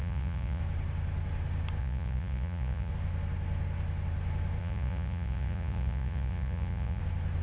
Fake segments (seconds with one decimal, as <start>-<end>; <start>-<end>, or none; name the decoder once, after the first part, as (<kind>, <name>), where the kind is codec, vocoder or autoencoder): 0.0-0.6 (vocoder, Vocos); 1.8-2.9; 4.6-7.0